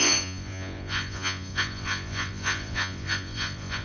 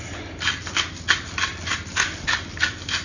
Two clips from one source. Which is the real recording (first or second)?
second